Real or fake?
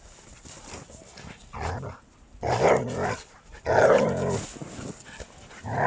real